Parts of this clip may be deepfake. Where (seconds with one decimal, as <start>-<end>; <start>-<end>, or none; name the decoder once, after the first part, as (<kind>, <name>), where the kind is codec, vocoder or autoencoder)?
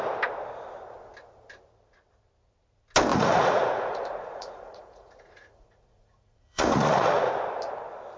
3.1-7.3 (vocoder, Vocos)